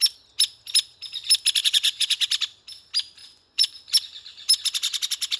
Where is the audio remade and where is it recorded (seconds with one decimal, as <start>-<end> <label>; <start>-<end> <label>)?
0.0-1.6 recorded; 1.6-2.3 remade; 2.3-3.2 recorded; 3.2-3.8 remade; 3.8-5.4 recorded